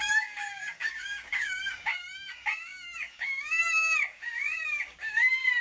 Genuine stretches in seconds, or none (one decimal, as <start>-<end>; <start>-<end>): none